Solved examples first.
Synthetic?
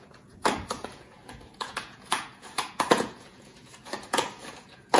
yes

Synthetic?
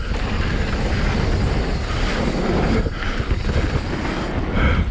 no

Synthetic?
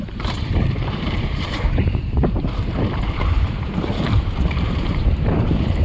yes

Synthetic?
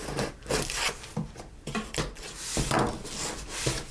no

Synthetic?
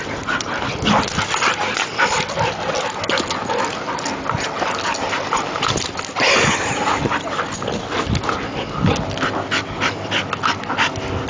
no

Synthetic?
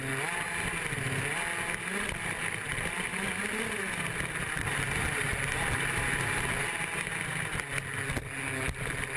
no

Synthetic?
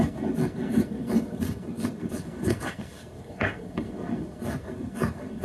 yes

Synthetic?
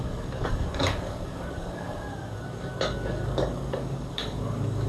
yes